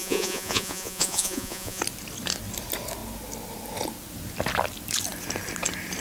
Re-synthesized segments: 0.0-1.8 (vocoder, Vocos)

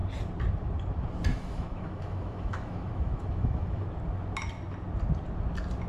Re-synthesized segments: 1.3-3.8 (autoencoder, DAC-VAE)